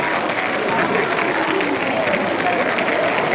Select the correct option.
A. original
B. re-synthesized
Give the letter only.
A